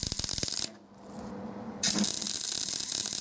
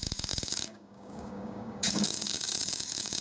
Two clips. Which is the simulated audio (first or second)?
second